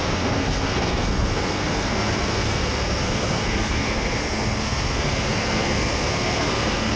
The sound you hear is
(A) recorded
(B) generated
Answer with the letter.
B